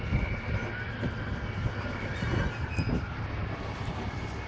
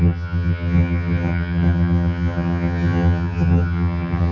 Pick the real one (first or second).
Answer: first